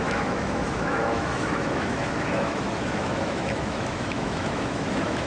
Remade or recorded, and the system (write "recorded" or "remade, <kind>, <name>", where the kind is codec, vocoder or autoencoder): remade, autoencoder, DAC-VAE